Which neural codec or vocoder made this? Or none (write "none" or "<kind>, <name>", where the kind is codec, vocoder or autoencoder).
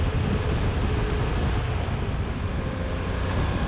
none